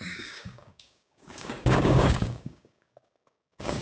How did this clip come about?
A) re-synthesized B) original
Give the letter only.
A